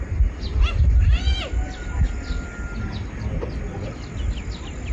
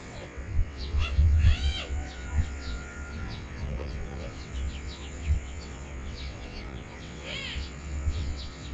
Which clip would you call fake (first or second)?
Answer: second